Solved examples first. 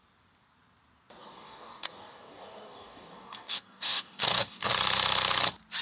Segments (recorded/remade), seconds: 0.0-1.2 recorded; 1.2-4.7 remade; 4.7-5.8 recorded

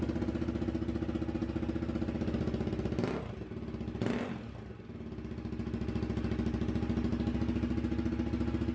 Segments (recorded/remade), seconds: 0.0-8.7 recorded